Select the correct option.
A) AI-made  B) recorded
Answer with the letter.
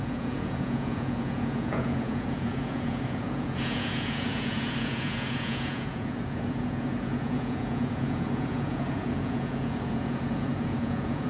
A